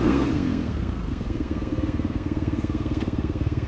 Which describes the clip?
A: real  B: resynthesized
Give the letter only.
B